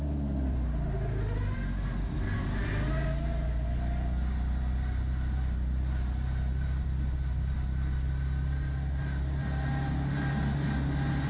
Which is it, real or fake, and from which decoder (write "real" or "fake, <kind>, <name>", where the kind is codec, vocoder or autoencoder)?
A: real